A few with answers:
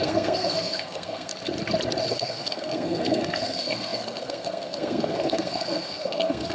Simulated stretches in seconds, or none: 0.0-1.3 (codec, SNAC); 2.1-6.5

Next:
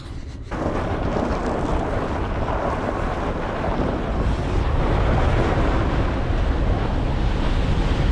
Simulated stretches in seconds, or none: none

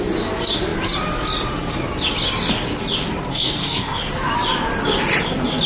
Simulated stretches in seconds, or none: 3.3-4.1 (codec, SNAC)

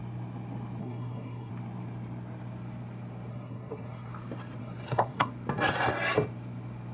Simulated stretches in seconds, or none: 0.8-1.5 (codec, SNAC); 3.3-4.1; 4.6-5.3

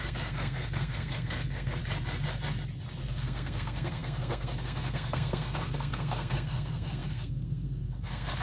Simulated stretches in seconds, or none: 0.0-1.8 (codec, SNAC); 3.0-8.4

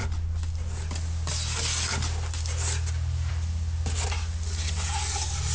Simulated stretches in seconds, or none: none

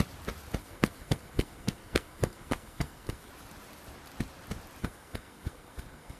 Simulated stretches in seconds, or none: 0.6-3.3 (codec, SNAC); 4.8-6.2